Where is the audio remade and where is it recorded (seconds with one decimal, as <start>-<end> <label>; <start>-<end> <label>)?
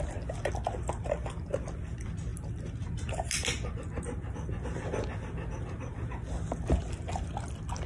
0.0-7.9 recorded